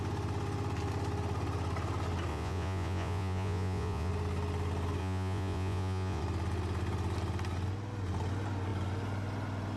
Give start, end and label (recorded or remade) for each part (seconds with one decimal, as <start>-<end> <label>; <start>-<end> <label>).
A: 0.0-2.3 recorded; 2.3-4.1 remade; 4.1-5.0 recorded; 5.0-6.2 remade; 6.2-9.8 recorded